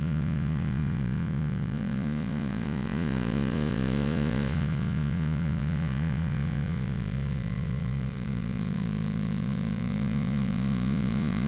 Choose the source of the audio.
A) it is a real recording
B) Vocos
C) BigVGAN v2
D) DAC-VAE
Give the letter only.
B